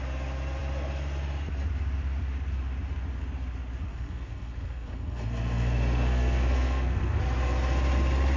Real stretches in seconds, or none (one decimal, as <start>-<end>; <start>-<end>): 0.0-3.9; 7.2-8.4